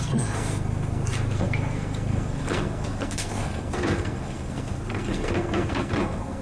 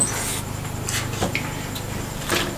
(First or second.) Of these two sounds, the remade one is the first